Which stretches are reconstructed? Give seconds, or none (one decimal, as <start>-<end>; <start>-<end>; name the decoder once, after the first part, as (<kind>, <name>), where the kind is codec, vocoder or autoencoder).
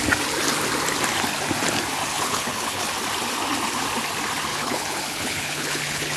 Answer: 2.1-2.9 (codec, HILCodec); 4.5-6.2